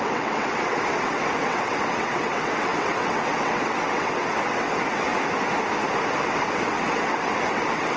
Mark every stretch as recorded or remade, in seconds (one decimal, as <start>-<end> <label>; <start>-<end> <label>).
0.0-5.1 remade; 5.1-6.1 recorded; 6.1-8.0 remade